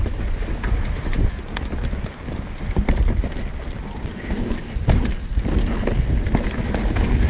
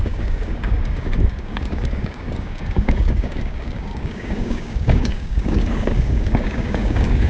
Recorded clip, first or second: first